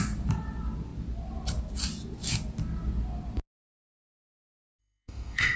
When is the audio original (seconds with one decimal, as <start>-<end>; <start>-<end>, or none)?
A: 0.0-4.8

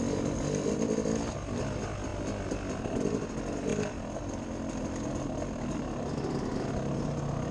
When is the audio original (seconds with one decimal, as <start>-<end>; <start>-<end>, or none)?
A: 0.0-7.5

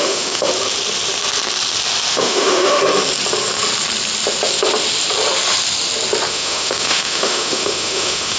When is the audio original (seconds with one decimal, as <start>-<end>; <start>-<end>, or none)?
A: 0.5-2.1; 2.8-6.3

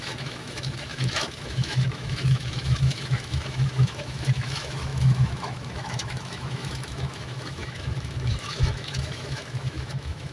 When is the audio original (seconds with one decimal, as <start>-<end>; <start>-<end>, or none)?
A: none

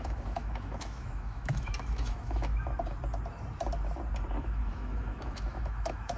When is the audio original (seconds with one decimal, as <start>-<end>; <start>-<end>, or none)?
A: 2.5-4.4